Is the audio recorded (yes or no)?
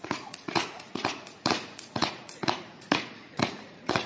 no